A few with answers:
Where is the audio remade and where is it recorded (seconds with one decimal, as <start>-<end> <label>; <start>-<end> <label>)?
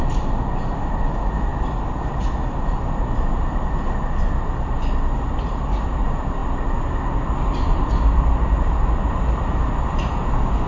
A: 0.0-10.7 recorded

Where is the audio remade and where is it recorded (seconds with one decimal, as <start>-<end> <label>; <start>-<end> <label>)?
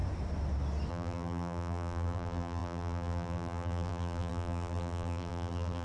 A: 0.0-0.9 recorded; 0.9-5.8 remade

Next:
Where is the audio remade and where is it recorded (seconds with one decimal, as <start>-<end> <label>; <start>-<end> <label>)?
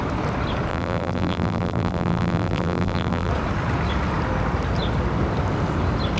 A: 0.0-0.7 recorded; 0.7-3.3 remade; 3.3-6.2 recorded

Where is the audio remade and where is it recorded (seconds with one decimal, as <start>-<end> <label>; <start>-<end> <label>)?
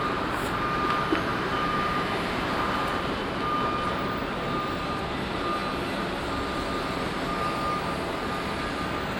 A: 0.0-1.3 recorded; 1.3-3.1 remade; 3.1-9.2 recorded